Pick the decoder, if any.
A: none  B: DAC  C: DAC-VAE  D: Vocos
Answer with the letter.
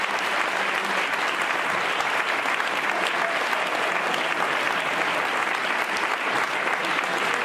A